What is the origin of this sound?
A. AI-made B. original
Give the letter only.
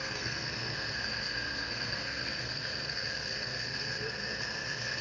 A